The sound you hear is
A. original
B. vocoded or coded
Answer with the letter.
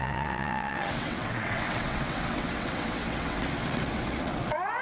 B